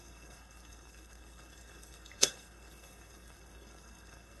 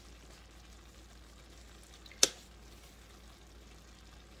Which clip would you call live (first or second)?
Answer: second